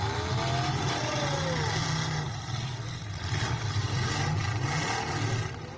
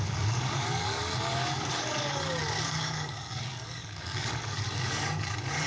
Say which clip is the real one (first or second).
first